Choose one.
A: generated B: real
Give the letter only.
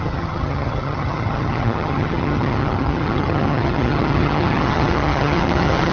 A